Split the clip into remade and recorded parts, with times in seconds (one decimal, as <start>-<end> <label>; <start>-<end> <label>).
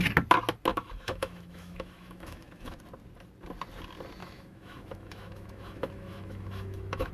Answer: 0.0-0.7 recorded; 0.7-2.8 remade; 2.8-4.2 recorded; 4.2-7.1 remade